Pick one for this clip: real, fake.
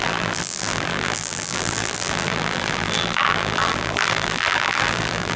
fake